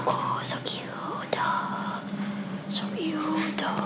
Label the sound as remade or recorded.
recorded